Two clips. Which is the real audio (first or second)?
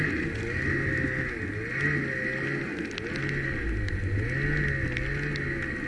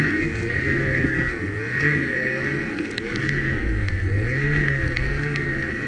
first